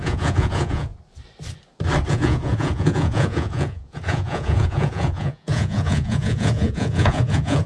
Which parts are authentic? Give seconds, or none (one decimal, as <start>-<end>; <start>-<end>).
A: 0.9-2.1